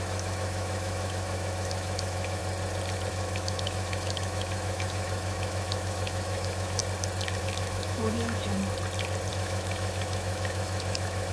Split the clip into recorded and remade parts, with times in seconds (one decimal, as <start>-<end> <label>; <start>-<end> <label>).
0.0-2.4 remade; 2.4-3.1 recorded; 3.1-6.8 remade; 6.8-7.4 recorded; 7.4-8.6 remade; 8.6-9.3 recorded; 9.3-11.3 remade